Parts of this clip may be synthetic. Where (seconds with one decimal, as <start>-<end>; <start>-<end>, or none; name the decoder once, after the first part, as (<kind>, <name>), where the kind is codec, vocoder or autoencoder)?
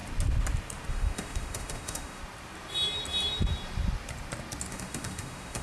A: 0.9-2.2 (autoencoder, DAC-VAE); 4.7-5.6